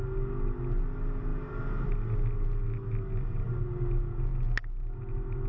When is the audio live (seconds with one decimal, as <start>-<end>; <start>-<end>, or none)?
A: 0.0-5.5